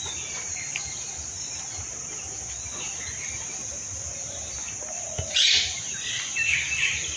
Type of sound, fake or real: real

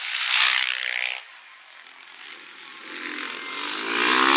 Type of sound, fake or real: real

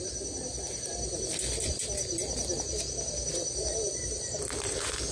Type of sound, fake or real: real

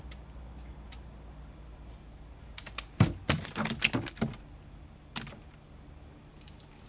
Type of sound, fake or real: real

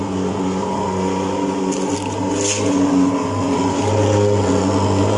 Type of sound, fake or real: real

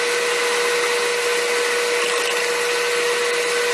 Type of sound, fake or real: real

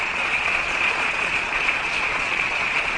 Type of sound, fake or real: fake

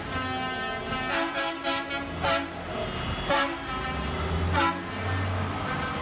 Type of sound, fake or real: real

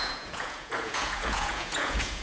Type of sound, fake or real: fake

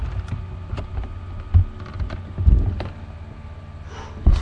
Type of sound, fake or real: real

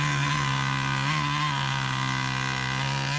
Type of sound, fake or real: real